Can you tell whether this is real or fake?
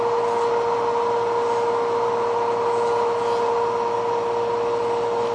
real